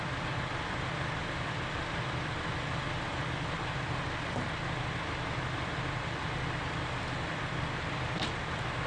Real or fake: fake